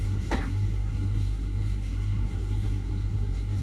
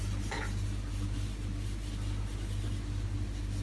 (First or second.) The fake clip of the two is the first